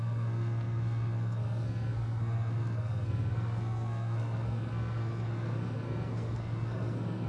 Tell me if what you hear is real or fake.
fake